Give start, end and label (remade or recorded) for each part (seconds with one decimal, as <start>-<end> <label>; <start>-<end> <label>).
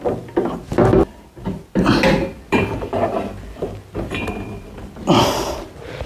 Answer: 0.0-2.3 recorded; 2.3-6.1 remade